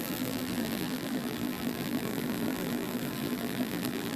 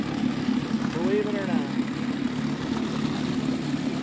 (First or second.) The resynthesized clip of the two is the first